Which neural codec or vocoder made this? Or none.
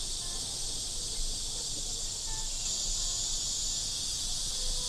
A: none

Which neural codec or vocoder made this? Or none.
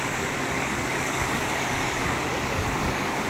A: codec, DAC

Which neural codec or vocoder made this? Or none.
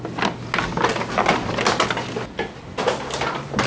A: none